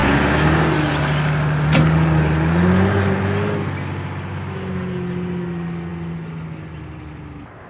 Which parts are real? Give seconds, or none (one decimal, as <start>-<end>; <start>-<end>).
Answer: 0.7-7.7